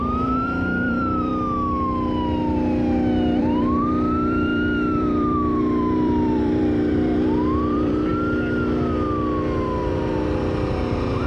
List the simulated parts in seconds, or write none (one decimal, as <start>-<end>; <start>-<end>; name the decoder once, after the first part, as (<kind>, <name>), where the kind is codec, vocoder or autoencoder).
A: 0.0-1.3 (vocoder, BigVGAN v2); 3.4-8.1